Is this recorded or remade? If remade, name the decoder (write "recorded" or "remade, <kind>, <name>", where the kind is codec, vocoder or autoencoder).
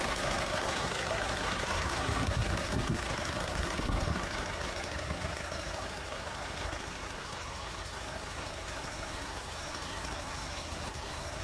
remade, codec, SNAC